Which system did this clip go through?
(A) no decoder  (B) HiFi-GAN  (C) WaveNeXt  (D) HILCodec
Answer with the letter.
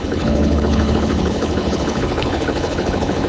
D